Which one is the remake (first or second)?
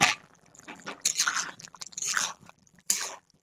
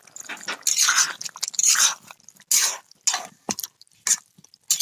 first